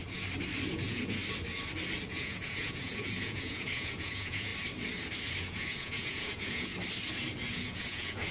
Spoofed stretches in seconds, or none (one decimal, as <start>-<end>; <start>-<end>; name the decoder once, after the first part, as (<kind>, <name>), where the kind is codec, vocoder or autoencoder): 0.7-1.2 (vocoder, Vocos); 2.1-4.5; 5.4-6.7; 7.5-8.3